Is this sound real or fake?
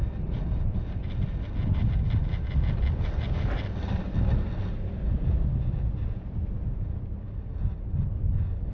real